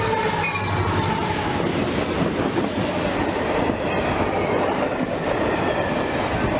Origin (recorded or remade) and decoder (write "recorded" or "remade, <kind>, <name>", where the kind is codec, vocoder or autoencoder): recorded